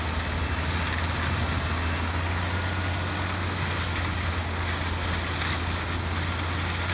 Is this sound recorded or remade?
recorded